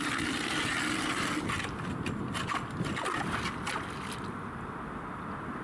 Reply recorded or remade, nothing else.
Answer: recorded